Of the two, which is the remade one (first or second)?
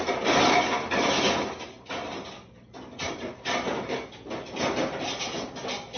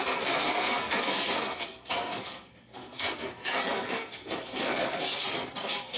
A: second